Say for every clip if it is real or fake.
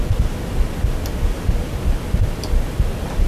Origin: real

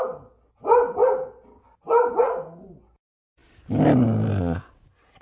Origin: real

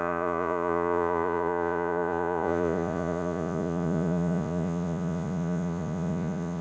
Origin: fake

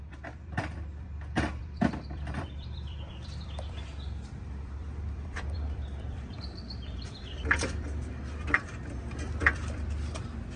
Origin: fake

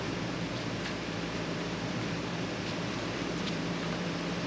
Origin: fake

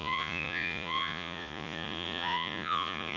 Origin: fake